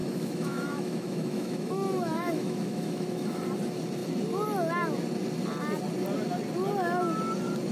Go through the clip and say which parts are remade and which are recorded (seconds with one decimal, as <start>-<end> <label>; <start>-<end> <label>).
0.0-3.4 remade; 3.4-7.7 recorded